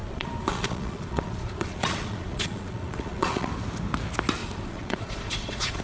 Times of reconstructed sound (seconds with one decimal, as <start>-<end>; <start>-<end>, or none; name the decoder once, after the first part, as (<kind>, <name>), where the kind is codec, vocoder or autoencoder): 0.0-3.5 (vocoder, Vocos); 4.4-5.8